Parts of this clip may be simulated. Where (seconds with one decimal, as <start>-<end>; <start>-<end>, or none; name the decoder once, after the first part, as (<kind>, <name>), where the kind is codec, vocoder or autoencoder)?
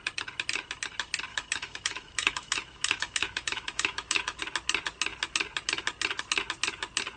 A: 1.3-4.4 (autoencoder, DAC-VAE)